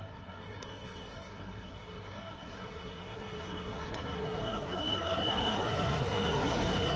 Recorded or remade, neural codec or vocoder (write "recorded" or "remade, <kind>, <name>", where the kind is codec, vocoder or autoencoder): remade, codec, SNAC